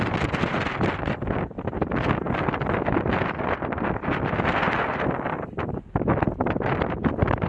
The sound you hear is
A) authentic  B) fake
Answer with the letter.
A